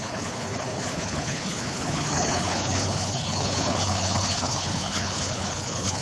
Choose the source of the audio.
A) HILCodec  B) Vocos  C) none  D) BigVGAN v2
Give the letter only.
A